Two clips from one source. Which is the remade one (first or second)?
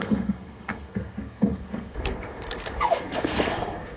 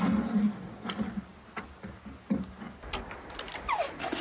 first